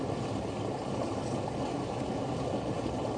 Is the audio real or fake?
real